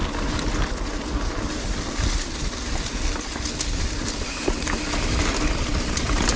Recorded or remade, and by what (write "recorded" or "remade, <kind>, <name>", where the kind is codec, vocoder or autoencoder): recorded